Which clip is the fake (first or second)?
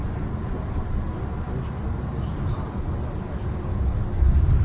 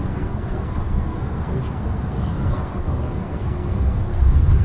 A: second